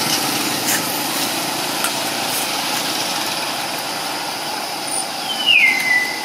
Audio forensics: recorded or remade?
recorded